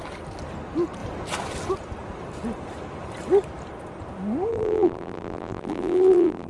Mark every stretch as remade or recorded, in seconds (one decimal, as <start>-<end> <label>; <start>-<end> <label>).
0.0-4.5 recorded; 4.5-6.5 remade